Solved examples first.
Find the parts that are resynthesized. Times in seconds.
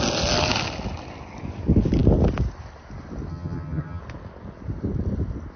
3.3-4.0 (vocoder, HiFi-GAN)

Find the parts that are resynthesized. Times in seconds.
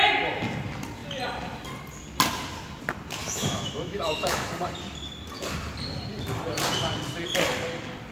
3.2-4.5 (autoencoder, DAC-VAE)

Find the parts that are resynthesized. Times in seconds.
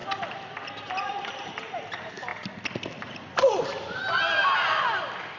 none